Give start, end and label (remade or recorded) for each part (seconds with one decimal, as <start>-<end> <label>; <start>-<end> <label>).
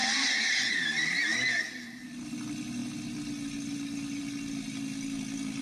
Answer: 0.0-0.7 remade; 0.7-5.6 recorded